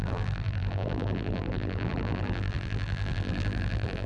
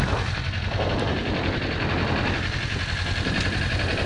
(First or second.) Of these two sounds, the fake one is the first